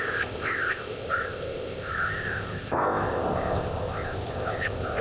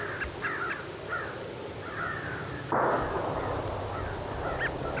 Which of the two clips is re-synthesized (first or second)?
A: first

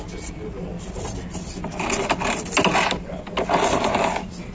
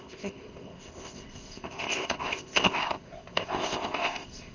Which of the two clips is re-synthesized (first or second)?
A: second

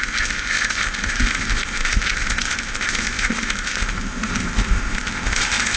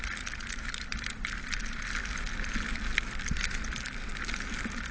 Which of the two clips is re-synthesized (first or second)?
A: first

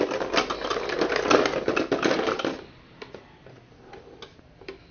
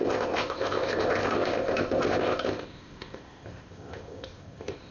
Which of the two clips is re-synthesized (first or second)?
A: second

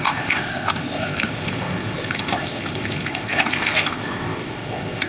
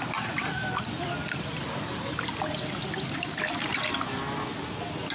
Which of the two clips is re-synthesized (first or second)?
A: first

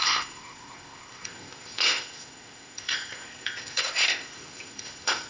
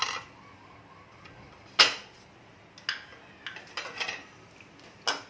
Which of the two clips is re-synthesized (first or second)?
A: first